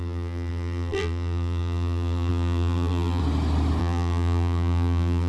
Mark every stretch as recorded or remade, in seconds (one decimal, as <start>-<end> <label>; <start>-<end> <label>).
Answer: 0.0-3.2 remade; 3.2-3.8 recorded; 3.8-5.3 remade